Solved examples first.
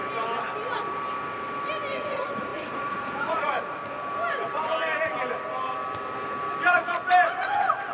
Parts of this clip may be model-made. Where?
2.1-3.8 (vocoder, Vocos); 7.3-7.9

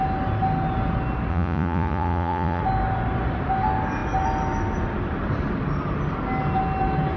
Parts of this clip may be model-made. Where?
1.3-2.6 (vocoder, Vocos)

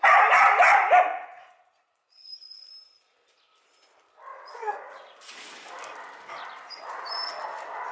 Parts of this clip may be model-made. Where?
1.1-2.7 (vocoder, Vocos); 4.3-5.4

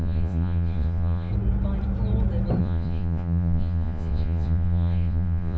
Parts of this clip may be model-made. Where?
0.0-1.3 (vocoder, Vocos); 2.6-5.6

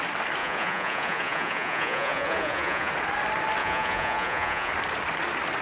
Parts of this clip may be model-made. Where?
0.4-2.9 (vocoder, Vocos); 3.6-4.7

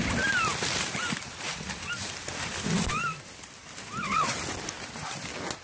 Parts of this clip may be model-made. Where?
none

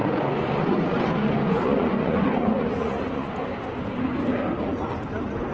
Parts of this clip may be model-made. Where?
0.0-3.3 (vocoder, Vocos)

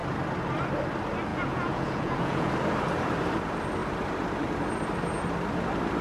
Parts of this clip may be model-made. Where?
1.3-2.5 (vocoder, Vocos)